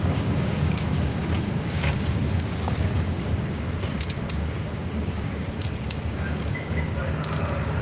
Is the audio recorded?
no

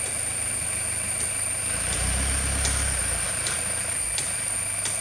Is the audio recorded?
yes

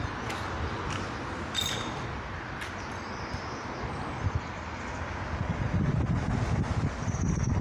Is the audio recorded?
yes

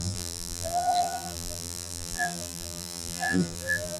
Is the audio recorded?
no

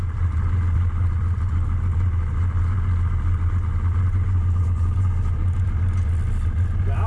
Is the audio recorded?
yes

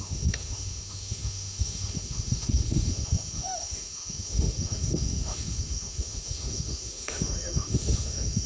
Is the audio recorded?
no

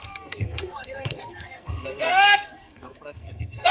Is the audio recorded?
no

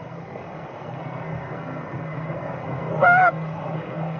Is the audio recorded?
no